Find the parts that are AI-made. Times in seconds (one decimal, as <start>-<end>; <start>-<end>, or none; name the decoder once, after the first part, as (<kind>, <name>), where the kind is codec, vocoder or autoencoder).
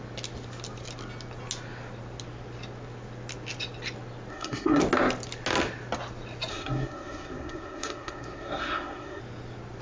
4.3-4.8 (codec, SNAC); 6.5-9.2